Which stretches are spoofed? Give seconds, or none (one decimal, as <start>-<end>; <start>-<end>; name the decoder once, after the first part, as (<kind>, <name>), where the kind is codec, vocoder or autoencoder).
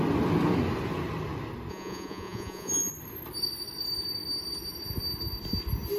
1.7-2.9 (vocoder, Vocos)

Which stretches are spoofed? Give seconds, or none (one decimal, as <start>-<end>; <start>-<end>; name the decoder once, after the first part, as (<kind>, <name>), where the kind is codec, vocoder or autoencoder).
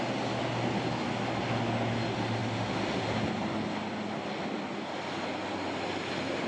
none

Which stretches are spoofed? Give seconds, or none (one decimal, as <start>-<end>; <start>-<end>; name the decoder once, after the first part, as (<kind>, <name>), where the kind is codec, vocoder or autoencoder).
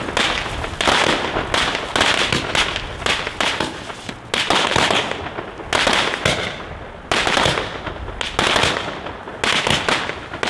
none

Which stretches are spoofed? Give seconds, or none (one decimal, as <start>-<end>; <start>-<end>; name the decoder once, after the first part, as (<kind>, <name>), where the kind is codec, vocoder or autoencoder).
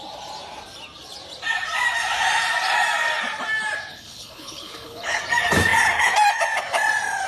3.9-5.2 (codec, HILCodec)